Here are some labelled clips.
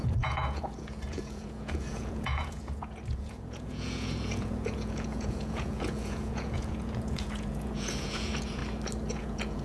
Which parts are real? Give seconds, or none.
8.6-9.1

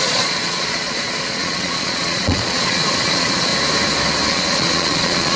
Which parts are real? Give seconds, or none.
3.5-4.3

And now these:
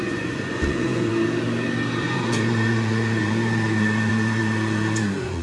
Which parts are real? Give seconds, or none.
1.1-2.0

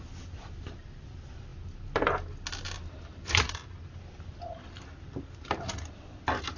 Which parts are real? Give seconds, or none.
0.0-6.6

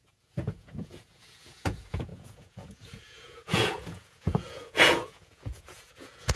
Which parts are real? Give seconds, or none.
none

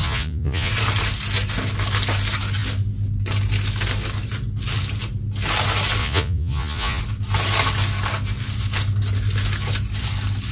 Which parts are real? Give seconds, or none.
0.7-6.0; 7.0-10.5